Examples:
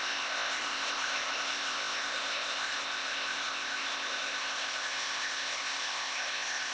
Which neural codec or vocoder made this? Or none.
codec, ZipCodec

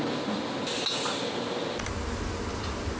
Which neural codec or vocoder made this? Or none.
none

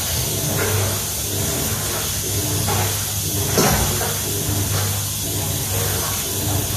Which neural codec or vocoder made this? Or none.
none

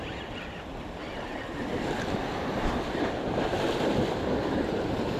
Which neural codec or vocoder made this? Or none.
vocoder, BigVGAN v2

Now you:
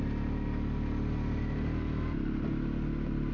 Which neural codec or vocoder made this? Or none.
none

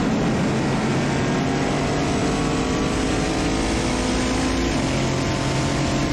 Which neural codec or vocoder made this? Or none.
none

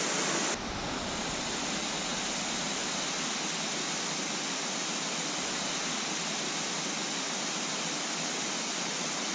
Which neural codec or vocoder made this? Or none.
none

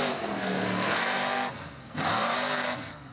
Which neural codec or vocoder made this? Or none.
codec, SNAC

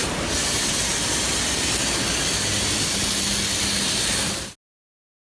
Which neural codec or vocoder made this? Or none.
none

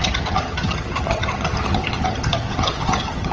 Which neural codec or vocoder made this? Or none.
vocoder, HiFi-GAN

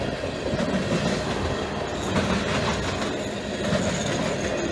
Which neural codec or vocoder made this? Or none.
none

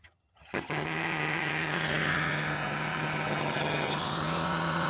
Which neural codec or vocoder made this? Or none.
vocoder, HiFi-GAN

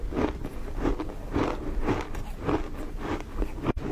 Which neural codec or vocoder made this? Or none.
none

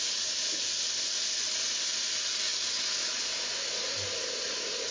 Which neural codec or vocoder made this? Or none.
none